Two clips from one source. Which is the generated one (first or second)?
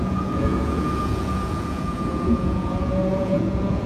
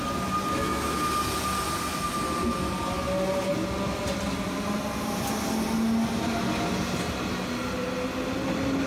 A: first